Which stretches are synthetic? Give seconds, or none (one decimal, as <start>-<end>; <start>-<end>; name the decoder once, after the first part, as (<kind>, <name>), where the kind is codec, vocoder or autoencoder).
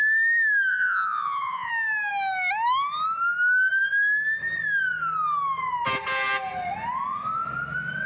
0.7-1.7 (vocoder, Vocos)